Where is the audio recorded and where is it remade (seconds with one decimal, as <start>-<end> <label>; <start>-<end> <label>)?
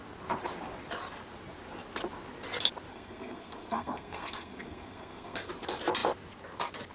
0.0-2.9 recorded; 2.9-5.5 remade; 5.5-6.9 recorded